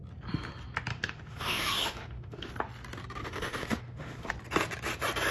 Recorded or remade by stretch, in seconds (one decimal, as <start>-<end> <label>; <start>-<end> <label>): 0.0-0.9 recorded; 0.9-2.5 remade; 2.5-3.2 recorded; 3.2-4.3 remade; 4.3-5.3 recorded